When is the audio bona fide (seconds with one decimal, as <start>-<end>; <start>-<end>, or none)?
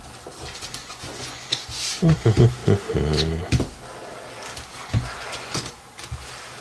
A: 0.0-0.8; 2.2-4.8; 5.8-6.6